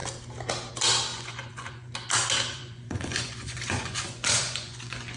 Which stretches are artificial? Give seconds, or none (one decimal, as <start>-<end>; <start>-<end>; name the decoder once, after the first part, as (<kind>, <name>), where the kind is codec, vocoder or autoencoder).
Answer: 1.1-1.9 (vocoder, Vocos); 2.5-5.2